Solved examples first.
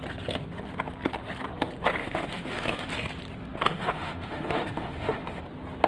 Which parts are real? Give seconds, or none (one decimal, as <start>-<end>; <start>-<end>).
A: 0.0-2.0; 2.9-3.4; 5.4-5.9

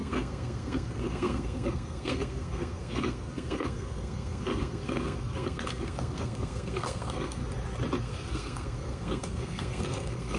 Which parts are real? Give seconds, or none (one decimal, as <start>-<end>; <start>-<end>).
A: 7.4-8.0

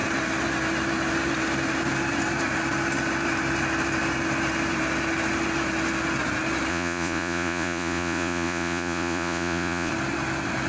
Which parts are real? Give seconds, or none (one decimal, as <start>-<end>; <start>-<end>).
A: 0.0-6.7; 9.9-10.7

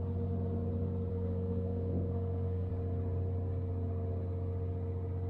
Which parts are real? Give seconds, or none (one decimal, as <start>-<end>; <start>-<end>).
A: 0.0-1.1; 2.7-5.3